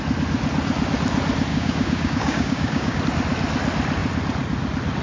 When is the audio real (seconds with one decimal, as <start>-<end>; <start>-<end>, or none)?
0.0-1.5; 3.0-5.0